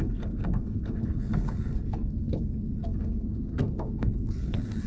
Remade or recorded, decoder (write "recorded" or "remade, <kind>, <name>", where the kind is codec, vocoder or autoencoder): remade, codec, SNAC